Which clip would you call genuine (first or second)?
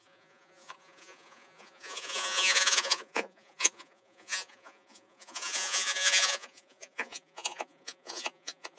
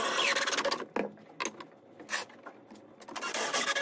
second